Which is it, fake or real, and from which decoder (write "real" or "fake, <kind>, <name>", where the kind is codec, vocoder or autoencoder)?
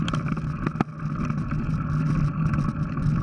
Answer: real